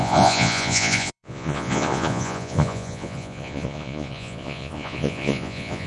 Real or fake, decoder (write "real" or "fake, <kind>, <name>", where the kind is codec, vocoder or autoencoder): fake, vocoder, Vocos